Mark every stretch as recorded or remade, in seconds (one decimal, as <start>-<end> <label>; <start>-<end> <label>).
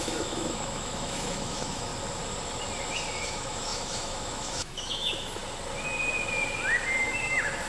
0.0-1.9 remade; 1.9-3.2 recorded; 3.2-5.4 remade; 5.4-7.0 recorded; 7.0-7.7 remade